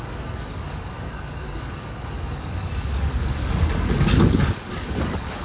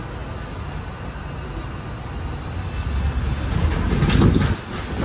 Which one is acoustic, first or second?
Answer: second